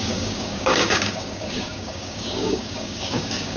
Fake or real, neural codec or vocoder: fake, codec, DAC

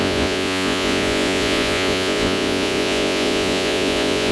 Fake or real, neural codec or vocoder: fake, vocoder, Vocos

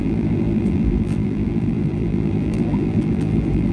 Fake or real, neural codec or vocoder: fake, vocoder, BigVGAN v2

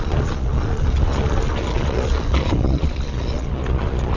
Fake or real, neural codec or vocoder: fake, vocoder, Vocos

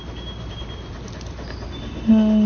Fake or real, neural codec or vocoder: real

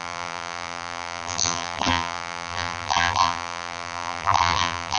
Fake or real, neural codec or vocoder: fake, vocoder, BigVGAN v2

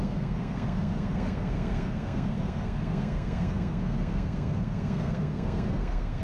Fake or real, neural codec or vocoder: fake, codec, SNAC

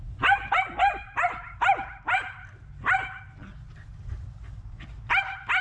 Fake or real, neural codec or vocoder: real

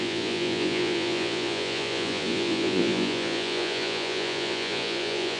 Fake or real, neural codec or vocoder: fake, vocoder, Vocos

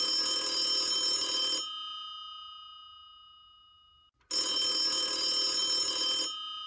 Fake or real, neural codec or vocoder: real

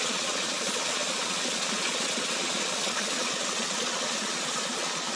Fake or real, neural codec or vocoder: fake, vocoder, Vocos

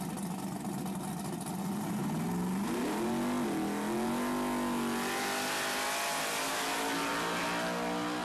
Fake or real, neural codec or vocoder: real